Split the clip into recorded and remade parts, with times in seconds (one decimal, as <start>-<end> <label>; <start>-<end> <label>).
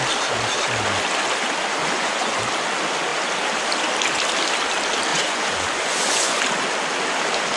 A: 0.0-1.8 recorded; 1.8-2.4 remade; 2.4-5.1 recorded; 5.1-6.4 remade; 6.4-7.6 recorded